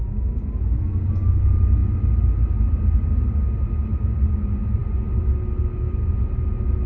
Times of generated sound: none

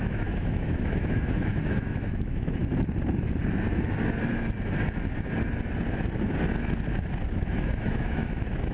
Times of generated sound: 0.0-2.6 (autoencoder, DAC-VAE); 7.3-8.7